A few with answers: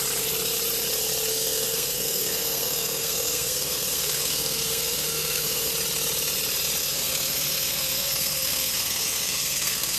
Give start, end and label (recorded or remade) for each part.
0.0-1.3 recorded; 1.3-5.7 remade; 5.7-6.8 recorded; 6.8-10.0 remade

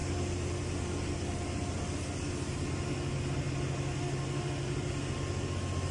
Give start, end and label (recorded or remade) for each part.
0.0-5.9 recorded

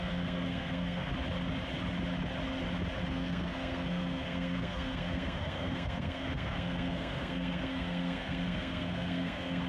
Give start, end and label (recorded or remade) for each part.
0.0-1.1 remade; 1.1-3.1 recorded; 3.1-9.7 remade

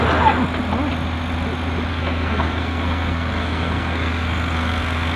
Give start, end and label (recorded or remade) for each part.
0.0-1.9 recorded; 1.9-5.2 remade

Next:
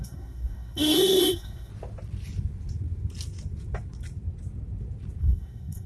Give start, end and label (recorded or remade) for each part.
0.0-1.7 remade; 1.7-5.2 recorded; 5.2-5.9 remade

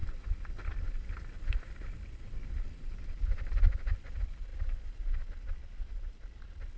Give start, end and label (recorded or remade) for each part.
0.0-6.8 recorded